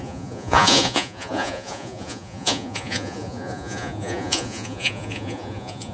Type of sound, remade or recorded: remade